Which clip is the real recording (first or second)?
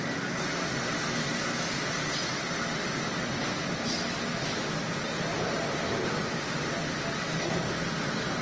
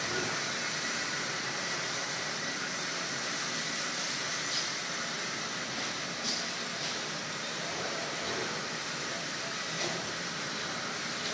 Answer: first